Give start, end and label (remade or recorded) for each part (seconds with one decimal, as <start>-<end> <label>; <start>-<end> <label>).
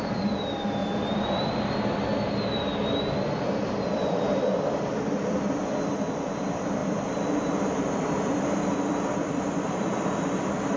0.0-0.8 remade; 0.8-3.0 recorded; 3.0-10.8 remade